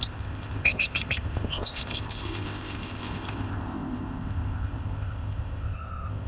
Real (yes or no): no